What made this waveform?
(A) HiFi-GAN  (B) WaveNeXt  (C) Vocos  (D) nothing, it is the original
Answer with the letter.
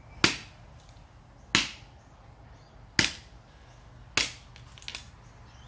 D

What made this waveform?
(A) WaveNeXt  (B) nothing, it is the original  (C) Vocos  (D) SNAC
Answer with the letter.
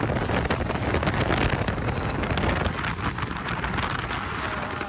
B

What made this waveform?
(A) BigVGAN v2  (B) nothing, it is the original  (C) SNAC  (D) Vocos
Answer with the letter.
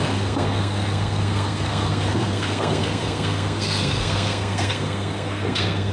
C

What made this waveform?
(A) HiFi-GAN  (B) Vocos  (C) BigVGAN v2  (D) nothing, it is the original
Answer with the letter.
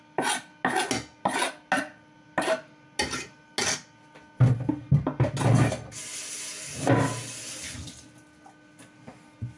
D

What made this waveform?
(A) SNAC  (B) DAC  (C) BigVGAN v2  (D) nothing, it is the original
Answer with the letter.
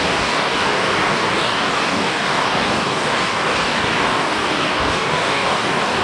B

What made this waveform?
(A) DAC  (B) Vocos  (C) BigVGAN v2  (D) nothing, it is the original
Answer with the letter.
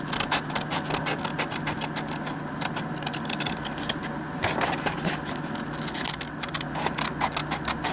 D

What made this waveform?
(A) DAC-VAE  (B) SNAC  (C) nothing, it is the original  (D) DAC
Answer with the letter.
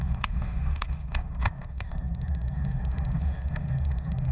A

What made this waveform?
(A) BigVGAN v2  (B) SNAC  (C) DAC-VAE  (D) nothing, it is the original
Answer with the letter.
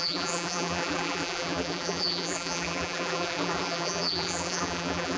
A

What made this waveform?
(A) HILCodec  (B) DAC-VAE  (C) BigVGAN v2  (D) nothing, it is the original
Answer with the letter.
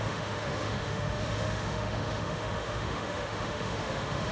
B